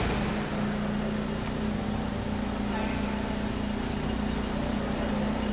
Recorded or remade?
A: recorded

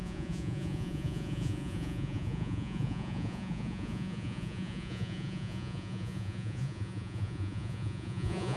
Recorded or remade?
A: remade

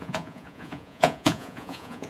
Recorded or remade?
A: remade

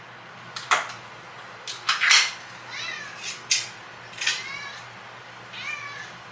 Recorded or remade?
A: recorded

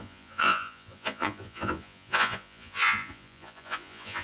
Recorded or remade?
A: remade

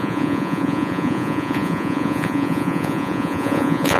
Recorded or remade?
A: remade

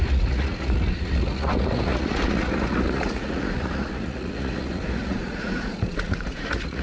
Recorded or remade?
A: remade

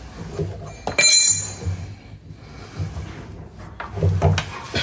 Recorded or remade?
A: recorded